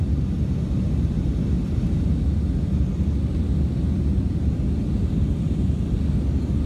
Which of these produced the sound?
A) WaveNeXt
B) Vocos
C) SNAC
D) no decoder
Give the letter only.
D